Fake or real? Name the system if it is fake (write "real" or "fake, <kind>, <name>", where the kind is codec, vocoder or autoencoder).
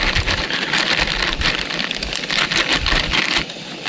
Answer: real